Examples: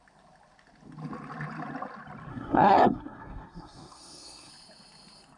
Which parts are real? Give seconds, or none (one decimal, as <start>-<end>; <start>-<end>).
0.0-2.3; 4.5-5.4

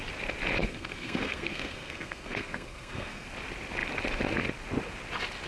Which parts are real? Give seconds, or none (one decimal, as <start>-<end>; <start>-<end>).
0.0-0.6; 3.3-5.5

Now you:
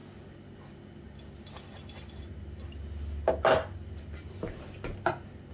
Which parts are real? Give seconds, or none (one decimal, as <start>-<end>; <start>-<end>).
0.0-5.5

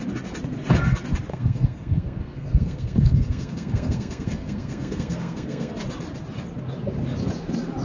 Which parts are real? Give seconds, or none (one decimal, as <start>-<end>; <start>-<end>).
0.0-1.3; 5.7-7.8